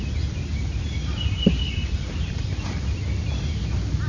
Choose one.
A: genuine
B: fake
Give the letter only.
A